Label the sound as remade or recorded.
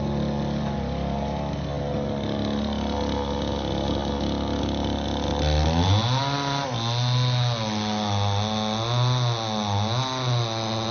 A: recorded